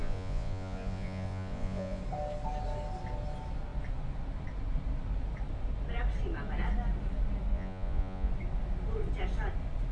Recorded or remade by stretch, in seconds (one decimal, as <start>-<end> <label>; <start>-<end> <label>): 0.0-2.0 remade; 2.0-7.5 recorded; 7.5-8.3 remade; 8.3-9.9 recorded